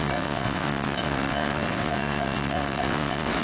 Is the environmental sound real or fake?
fake